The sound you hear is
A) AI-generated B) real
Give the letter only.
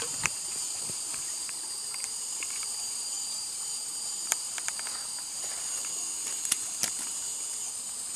A